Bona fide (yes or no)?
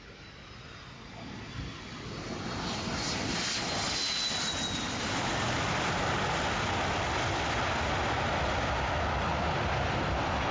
yes